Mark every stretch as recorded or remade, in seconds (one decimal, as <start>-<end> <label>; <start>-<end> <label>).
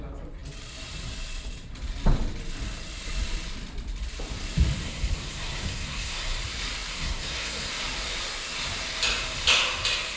0.0-4.8 recorded; 4.8-6.4 remade; 6.4-6.9 recorded; 6.9-7.7 remade; 7.7-10.2 recorded